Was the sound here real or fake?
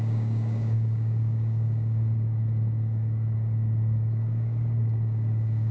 fake